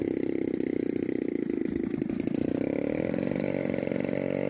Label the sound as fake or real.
fake